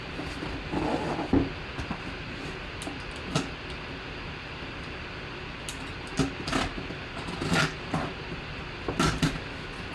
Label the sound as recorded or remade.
recorded